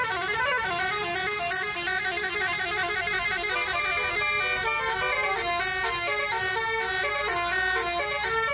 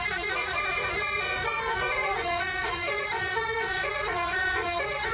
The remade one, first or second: second